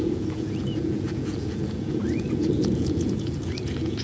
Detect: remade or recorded remade